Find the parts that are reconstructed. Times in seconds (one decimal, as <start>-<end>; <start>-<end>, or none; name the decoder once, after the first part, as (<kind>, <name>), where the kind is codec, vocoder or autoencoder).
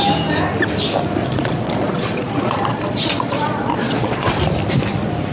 1.2-4.3 (vocoder, Vocos)